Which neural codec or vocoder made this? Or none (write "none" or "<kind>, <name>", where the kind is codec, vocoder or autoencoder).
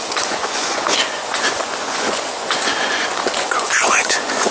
vocoder, Vocos